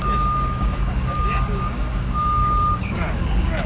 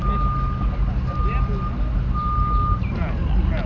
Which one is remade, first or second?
first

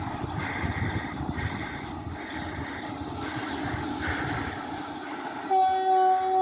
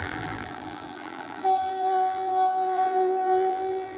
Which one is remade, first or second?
second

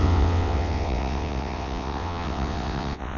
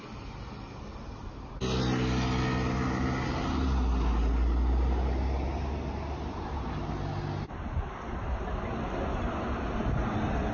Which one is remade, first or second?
first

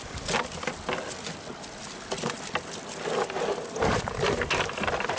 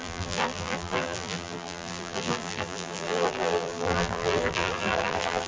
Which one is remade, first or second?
second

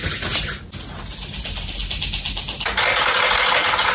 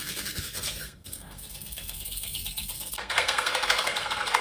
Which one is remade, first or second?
second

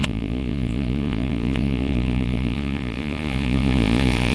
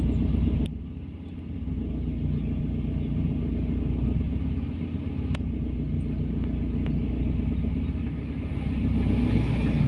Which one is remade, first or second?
first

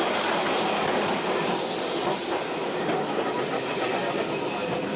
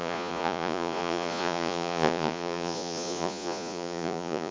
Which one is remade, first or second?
second